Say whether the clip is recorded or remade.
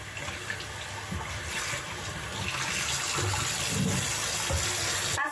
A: recorded